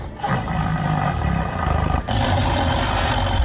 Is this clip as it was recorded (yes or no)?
no